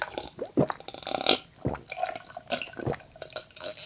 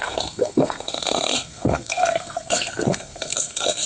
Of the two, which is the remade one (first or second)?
second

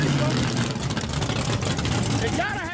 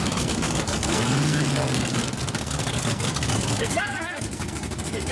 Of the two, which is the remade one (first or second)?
second